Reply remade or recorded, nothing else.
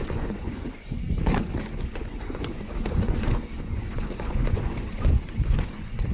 remade